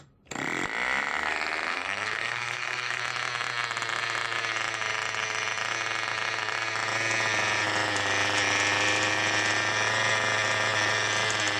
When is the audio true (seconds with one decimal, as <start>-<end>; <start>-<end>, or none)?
0.0-1.7; 3.0-11.6